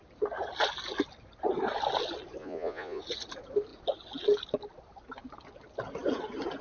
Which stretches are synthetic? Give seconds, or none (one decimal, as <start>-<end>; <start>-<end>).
2.4-3.0